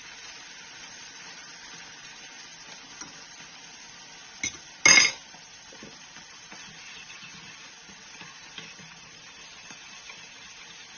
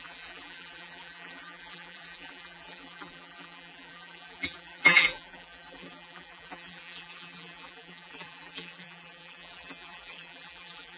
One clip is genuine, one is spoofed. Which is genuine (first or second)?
first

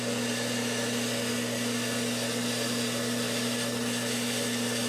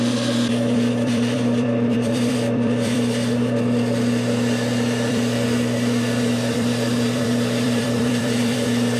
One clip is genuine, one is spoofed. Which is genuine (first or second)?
first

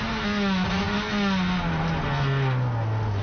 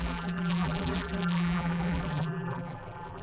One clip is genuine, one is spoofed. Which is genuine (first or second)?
first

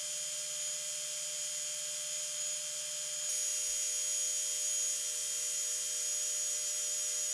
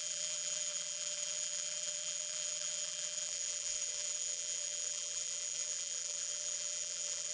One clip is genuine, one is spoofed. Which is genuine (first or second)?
first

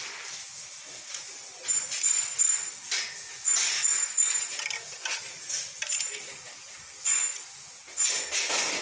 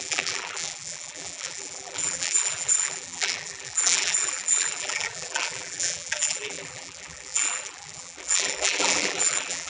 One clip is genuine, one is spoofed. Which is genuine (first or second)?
first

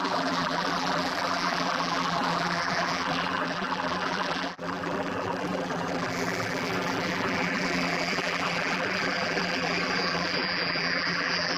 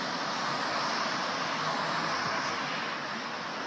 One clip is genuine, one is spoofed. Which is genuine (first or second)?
second